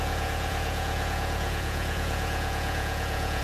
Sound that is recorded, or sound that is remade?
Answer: remade